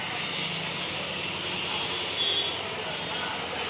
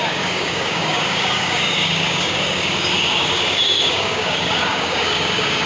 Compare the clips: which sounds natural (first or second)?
first